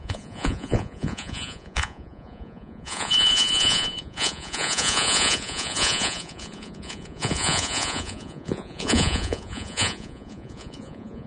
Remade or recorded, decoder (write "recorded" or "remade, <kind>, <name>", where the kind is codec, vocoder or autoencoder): remade, vocoder, Vocos